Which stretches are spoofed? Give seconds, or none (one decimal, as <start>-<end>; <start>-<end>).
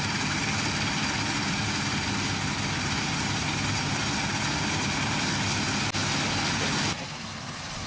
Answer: none